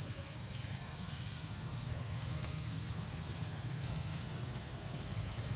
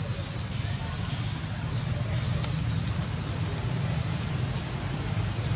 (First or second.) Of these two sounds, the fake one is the first